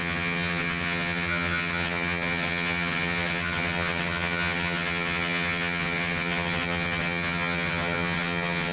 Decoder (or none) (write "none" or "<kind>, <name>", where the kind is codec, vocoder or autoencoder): vocoder, HiFi-GAN